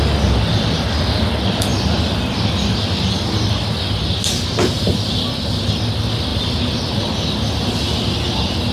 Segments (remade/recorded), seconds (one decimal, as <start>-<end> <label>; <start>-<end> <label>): 0.0-8.7 recorded